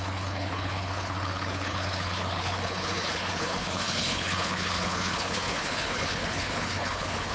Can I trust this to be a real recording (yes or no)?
no